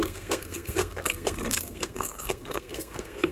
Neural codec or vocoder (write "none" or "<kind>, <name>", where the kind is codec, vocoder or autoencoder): codec, SNAC